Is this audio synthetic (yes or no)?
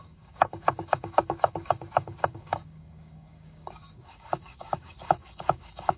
yes